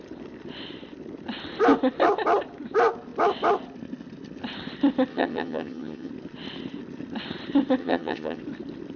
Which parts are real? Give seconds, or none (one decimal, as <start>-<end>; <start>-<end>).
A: 0.0-5.1; 6.1-7.8; 8.4-9.0